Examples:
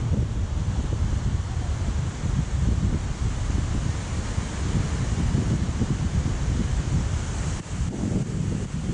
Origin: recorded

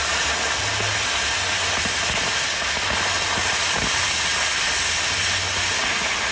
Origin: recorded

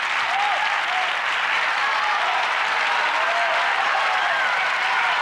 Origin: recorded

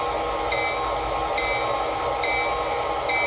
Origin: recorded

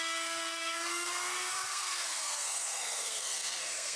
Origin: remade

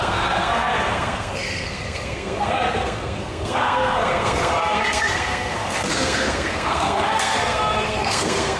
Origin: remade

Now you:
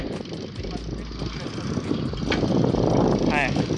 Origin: recorded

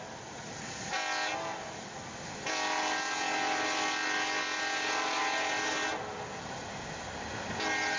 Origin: recorded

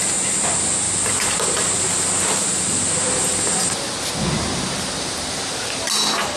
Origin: recorded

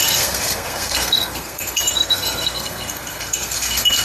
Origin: remade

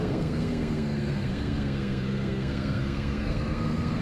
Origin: remade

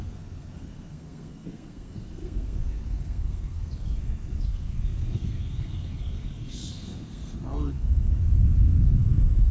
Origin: remade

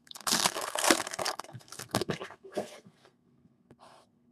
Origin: remade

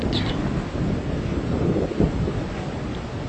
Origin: recorded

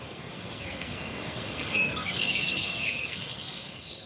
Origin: remade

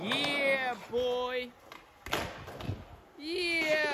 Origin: recorded